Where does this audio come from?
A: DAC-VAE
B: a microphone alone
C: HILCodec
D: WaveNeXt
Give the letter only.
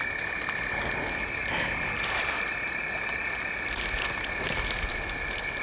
B